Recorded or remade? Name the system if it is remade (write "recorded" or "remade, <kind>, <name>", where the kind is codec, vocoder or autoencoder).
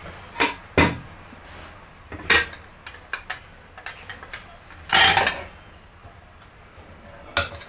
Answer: recorded